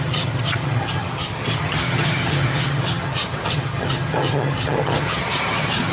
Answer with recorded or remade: remade